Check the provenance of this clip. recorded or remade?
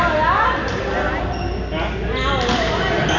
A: recorded